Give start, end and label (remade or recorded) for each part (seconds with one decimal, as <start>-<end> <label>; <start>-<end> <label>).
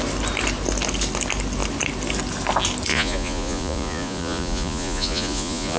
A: 0.0-2.9 recorded; 2.9-5.8 remade